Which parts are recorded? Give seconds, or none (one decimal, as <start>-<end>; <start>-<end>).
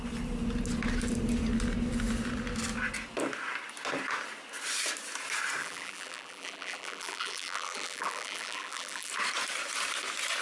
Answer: 0.0-5.6; 9.1-10.4